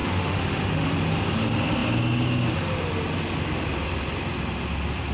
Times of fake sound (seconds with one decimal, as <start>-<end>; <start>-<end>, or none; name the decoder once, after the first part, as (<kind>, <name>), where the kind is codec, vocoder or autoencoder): 0.0-0.9 (autoencoder, DAC-VAE)